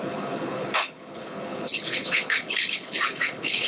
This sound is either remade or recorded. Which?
remade